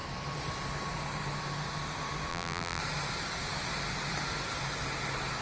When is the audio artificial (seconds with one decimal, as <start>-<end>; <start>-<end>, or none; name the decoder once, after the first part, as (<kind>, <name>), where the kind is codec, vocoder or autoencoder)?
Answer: 2.3-2.8 (vocoder, BigVGAN v2)